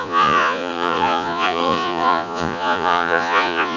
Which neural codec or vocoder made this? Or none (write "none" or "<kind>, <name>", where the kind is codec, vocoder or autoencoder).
vocoder, Vocos